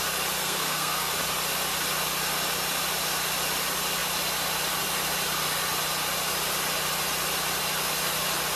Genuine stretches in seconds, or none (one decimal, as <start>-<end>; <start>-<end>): 0.0-0.4; 1.1-8.6